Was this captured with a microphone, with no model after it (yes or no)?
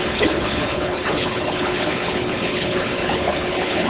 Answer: no